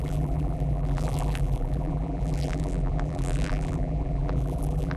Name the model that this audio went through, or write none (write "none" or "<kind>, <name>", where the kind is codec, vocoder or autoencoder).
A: vocoder, BigVGAN v2